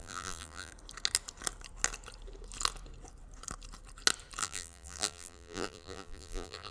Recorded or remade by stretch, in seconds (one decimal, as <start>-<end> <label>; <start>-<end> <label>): 0.0-0.7 remade; 0.7-4.4 recorded; 4.4-6.7 remade